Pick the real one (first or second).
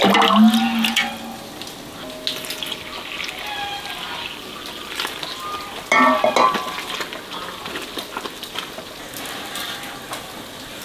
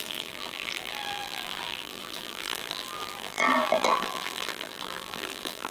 first